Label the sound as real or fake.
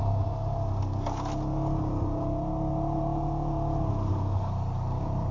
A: real